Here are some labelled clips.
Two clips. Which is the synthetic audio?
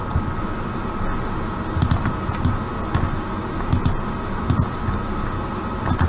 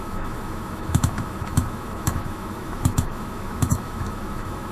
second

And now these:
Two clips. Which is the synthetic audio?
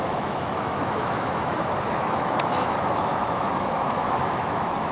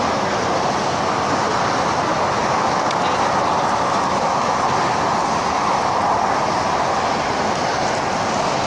first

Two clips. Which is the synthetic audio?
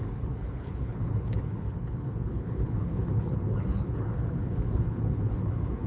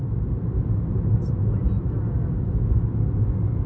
first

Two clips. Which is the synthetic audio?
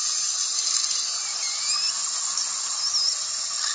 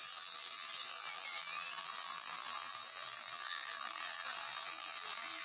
second